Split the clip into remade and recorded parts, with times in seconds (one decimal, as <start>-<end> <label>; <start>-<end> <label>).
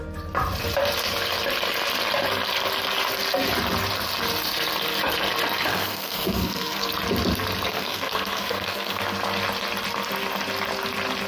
0.0-5.7 recorded; 5.7-6.9 remade; 6.9-7.7 recorded; 7.7-9.0 remade; 9.0-11.3 recorded